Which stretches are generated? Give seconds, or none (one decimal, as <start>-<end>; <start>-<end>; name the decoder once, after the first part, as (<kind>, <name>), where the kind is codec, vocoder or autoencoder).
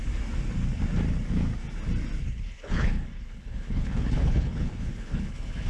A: 2.2-5.7 (codec, HILCodec)